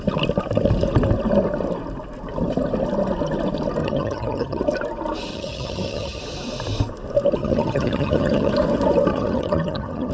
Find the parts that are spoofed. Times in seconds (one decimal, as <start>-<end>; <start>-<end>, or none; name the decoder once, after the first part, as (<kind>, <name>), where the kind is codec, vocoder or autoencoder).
3.8-4.6 (vocoder, HiFi-GAN); 5.3-6.2; 7.4-8.5; 9.1-10.1